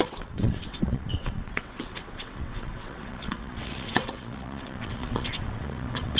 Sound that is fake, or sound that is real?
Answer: fake